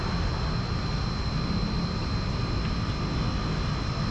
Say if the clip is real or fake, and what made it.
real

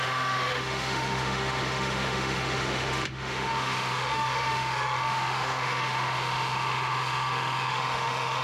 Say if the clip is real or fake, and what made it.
fake, autoencoder, DAC-VAE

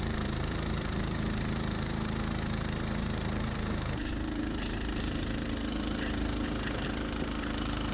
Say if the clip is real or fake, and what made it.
fake, vocoder, BigVGAN v2